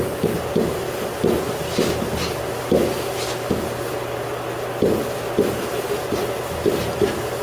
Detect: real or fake real